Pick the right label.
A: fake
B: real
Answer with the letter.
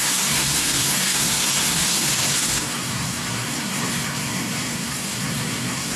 A